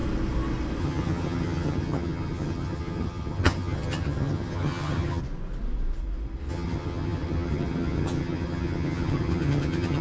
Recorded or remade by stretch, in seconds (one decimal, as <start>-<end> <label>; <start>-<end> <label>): 0.0-0.8 recorded; 0.8-5.2 remade; 5.2-6.5 recorded; 6.5-10.0 remade